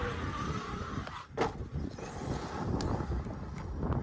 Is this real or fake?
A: real